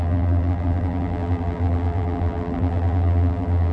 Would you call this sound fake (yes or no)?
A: yes